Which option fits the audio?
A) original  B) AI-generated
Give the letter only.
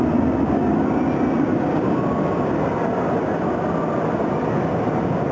A